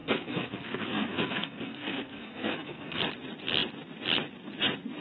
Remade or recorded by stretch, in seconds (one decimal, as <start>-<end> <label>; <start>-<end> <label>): 0.0-3.0 remade; 3.0-5.0 recorded